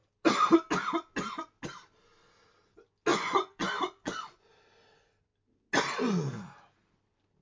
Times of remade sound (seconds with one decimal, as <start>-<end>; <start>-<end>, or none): 3.1-4.5